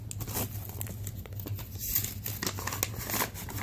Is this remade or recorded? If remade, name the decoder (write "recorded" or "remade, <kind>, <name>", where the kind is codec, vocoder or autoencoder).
recorded